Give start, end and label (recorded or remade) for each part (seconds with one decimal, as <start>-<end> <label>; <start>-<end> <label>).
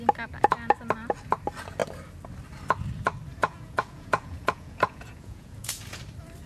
0.0-3.4 recorded; 3.4-6.0 remade; 6.0-6.5 recorded